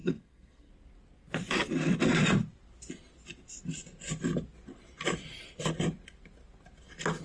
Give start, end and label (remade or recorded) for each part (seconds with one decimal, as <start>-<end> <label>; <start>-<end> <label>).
0.0-0.7 remade; 0.7-7.2 recorded